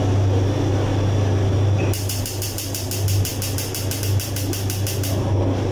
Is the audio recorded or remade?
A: recorded